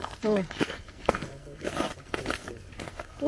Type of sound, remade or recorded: remade